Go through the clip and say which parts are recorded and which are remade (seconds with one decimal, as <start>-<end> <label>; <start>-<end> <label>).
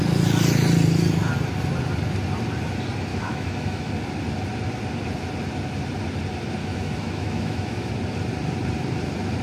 0.0-3.1 recorded; 3.1-3.9 remade; 3.9-6.6 recorded; 6.6-7.9 remade; 7.9-9.4 recorded